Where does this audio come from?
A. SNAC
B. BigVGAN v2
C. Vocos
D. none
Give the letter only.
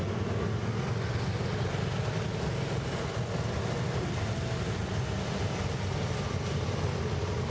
D